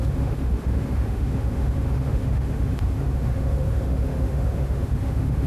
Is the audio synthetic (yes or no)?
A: yes